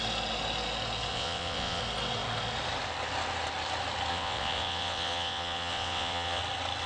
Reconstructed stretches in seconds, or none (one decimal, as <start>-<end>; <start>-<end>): 1.1-1.8; 4.1-6.4